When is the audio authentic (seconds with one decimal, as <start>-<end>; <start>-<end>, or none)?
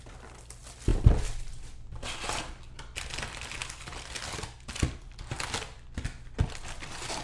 0.0-7.2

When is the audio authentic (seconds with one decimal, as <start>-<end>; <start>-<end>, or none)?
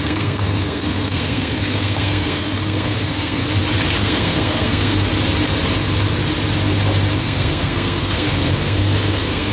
3.4-4.0; 5.1-7.2